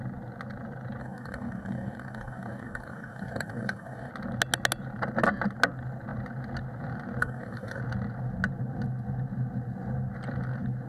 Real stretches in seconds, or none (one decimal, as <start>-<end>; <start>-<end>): 0.0-1.0; 4.1-7.2; 7.8-10.9